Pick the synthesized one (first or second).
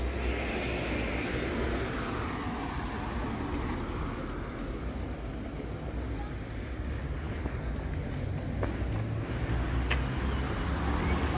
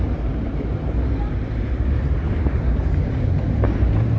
second